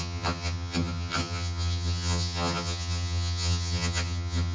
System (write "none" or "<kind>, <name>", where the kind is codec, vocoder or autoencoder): vocoder, HiFi-GAN